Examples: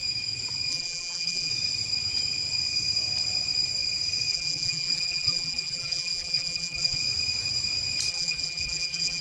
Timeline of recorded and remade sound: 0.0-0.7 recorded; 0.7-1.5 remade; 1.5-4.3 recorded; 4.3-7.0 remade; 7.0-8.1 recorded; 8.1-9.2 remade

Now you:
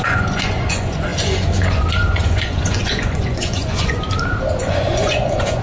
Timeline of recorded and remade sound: 0.0-4.0 remade; 4.0-4.6 recorded; 4.6-5.6 remade